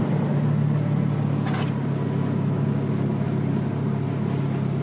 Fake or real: real